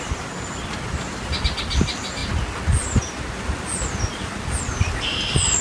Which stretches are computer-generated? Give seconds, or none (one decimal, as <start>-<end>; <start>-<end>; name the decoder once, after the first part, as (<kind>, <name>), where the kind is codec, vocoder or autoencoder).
none